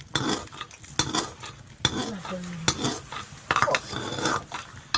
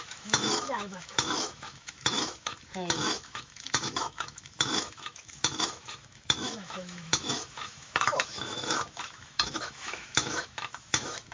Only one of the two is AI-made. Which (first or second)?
second